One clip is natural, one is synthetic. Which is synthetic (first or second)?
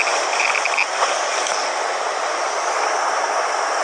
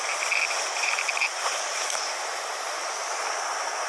second